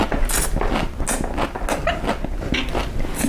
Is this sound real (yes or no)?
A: yes